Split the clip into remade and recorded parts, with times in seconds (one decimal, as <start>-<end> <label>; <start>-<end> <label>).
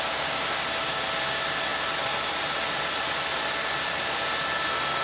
0.0-5.0 recorded